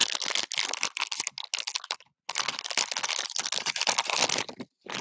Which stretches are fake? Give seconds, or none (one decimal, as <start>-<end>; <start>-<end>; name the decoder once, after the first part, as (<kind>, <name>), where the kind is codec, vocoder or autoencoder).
none